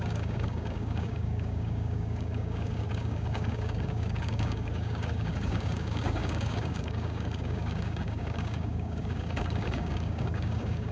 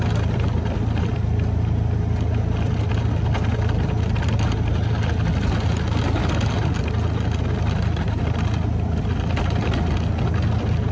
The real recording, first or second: second